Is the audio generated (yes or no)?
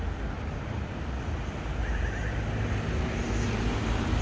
no